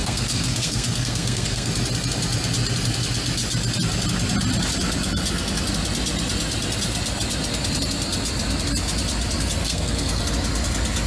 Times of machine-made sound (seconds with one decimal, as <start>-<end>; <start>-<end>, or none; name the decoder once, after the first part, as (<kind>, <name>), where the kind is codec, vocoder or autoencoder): 0.0-1.7 (codec, SNAC); 9.6-10.2